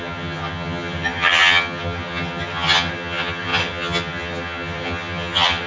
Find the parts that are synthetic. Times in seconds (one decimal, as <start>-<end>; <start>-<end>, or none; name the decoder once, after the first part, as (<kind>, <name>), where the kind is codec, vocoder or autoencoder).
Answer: 0.0-5.7 (vocoder, HiFi-GAN)